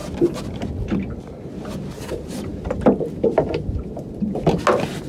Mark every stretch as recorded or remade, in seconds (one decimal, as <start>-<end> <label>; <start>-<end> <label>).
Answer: 0.0-5.1 recorded